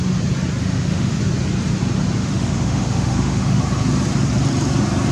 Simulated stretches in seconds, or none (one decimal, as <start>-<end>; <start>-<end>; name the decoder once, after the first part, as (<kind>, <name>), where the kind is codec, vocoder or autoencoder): 0.6-1.2 (autoencoder, DAC-VAE); 2.2-3.6